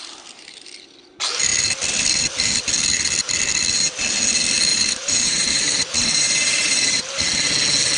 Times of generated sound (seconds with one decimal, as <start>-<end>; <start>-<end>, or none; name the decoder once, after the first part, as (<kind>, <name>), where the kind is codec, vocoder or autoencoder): 4.7-7.0 (vocoder, BigVGAN v2)